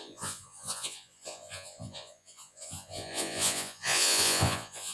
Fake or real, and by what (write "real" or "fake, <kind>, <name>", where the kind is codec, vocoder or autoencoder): fake, vocoder, Vocos